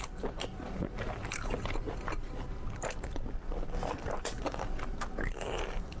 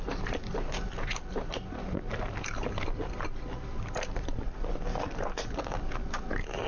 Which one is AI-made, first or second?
first